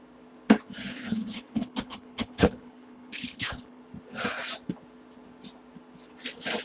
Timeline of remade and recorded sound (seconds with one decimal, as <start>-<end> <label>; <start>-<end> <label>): 0.0-0.9 recorded; 0.9-3.8 remade; 3.8-6.6 recorded